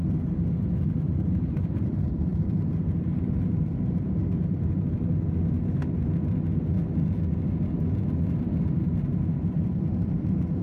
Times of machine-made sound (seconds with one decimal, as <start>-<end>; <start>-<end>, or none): 1.0-4.2; 9.5-10.6